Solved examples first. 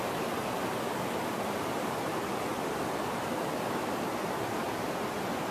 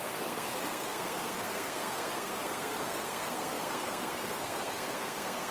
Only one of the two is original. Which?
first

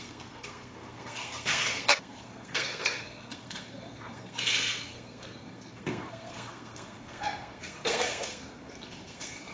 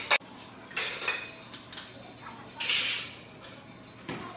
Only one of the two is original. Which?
second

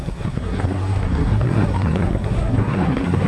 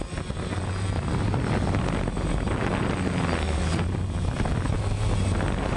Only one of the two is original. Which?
second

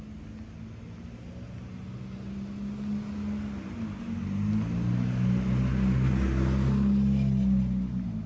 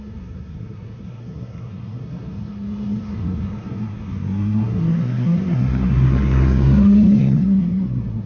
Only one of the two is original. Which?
first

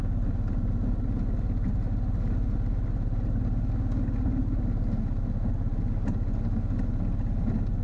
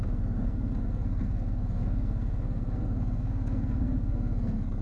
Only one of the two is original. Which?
first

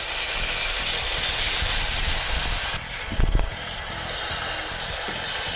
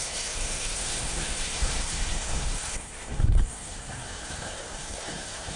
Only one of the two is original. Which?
first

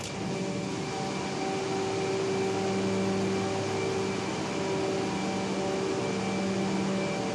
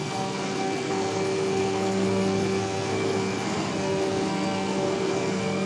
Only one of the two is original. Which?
first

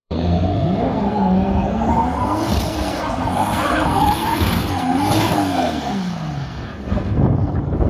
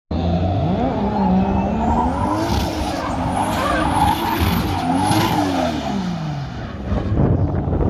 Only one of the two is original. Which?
second